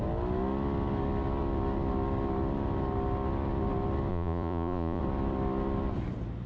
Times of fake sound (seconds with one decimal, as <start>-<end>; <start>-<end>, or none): 4.1-5.0